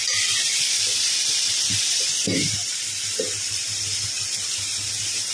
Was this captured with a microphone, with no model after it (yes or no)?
no